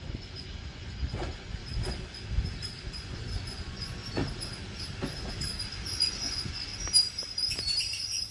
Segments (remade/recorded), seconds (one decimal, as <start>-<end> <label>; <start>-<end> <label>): 0.0-1.6 remade; 1.6-2.9 recorded; 2.9-4.2 remade; 4.2-6.0 recorded; 6.0-6.7 remade; 6.7-8.3 recorded